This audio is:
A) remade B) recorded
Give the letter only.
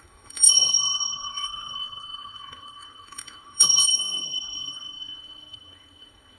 A